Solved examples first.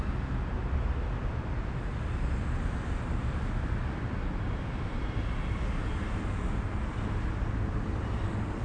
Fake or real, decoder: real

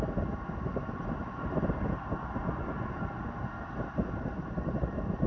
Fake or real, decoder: fake, vocoder, BigVGAN v2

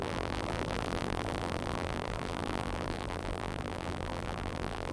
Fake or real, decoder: fake, vocoder, BigVGAN v2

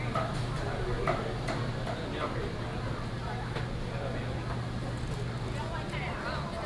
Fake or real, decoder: real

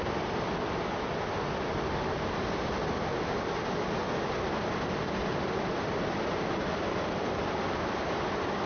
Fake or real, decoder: real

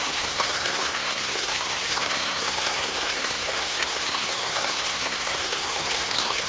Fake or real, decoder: fake, codec, SNAC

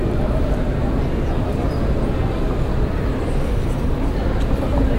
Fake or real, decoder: real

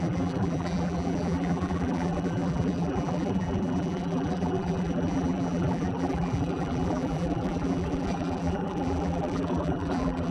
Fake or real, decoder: fake, vocoder, BigVGAN v2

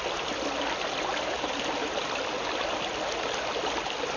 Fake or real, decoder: real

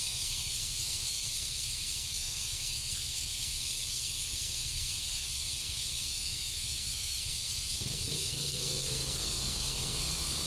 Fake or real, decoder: fake, codec, SNAC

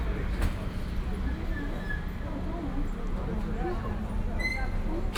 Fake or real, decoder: real